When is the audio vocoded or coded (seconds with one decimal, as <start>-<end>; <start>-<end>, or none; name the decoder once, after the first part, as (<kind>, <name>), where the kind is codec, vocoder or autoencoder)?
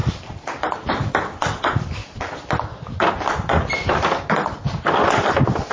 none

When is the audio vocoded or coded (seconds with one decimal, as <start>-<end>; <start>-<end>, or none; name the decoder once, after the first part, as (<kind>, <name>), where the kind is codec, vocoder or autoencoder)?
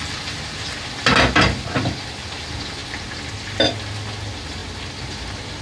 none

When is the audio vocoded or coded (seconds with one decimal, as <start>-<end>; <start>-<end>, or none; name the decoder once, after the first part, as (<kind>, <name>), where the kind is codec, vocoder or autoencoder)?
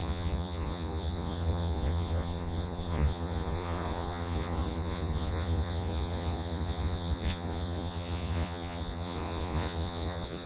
0.0-10.5 (vocoder, Vocos)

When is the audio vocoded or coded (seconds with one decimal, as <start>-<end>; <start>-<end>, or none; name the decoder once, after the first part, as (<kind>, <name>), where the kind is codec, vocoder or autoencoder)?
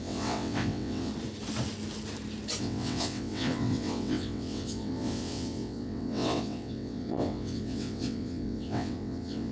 0.0-1.1 (vocoder, WaveNeXt); 2.6-9.5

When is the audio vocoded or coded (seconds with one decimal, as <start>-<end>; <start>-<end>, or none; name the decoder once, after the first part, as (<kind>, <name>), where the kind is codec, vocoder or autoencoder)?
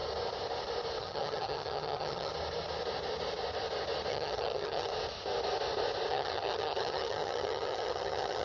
1.0-2.3 (vocoder, HiFi-GAN); 4.1-4.9; 6.1-8.4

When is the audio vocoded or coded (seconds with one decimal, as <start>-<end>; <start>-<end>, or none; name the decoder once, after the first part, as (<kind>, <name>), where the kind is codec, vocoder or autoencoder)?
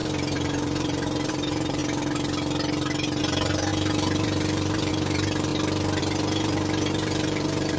0.0-1.8 (vocoder, BigVGAN v2); 3.2-5.5; 6.0-7.8